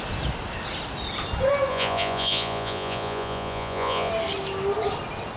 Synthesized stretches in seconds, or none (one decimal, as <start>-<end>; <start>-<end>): 1.7-4.1